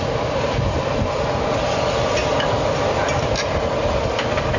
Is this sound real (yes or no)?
yes